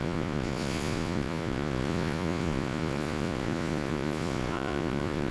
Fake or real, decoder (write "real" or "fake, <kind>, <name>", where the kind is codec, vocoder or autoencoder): fake, vocoder, Vocos